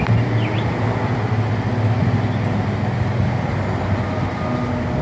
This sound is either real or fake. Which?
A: real